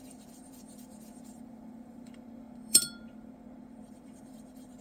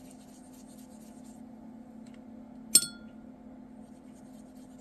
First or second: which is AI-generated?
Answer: first